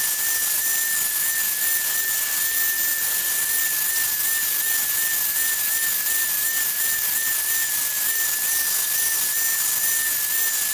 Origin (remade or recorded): recorded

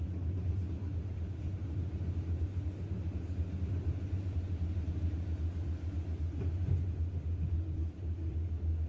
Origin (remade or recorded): recorded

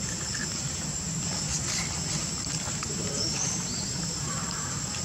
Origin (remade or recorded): remade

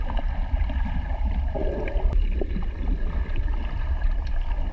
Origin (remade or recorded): remade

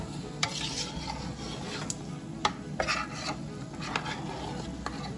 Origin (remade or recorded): recorded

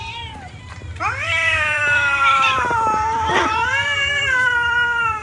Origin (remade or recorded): remade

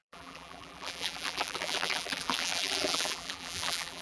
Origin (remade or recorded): remade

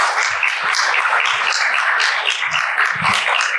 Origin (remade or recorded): recorded